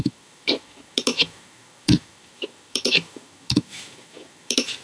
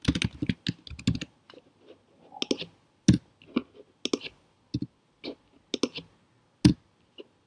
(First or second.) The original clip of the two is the second